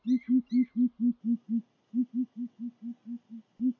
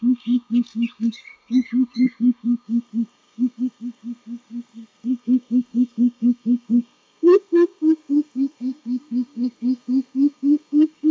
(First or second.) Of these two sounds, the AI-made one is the second